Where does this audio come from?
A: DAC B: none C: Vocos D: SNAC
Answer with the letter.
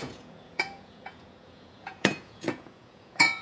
C